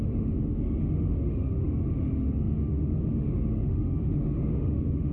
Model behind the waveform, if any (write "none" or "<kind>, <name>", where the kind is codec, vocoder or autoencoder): autoencoder, DAC-VAE